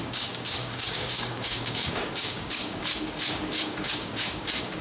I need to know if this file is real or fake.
fake